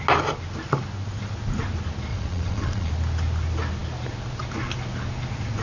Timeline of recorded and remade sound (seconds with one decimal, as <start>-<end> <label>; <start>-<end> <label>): 0.0-2.1 recorded; 2.1-2.9 remade; 2.9-5.6 recorded

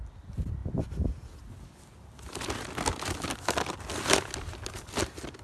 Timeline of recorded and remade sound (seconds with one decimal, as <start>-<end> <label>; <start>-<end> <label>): 0.0-5.4 recorded

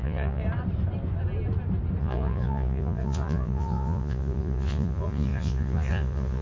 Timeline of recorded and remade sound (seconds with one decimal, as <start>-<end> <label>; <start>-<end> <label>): 0.0-0.4 remade; 0.4-2.0 recorded; 2.0-6.4 remade

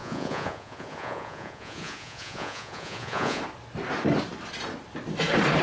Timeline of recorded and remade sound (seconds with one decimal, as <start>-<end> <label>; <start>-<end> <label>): 0.0-3.4 remade; 3.4-5.6 recorded

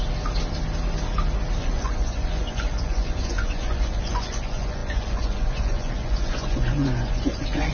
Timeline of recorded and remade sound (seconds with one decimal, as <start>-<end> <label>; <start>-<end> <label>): 0.0-1.6 recorded; 1.6-7.7 remade

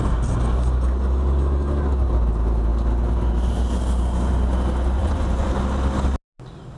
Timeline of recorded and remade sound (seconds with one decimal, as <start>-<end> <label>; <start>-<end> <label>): 0.0-5.0 recorded; 5.0-5.5 remade; 5.5-6.8 recorded

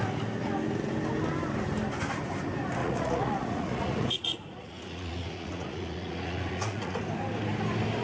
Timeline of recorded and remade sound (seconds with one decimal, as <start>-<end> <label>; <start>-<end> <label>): 0.0-2.8 recorded; 2.8-7.0 remade; 7.0-8.0 recorded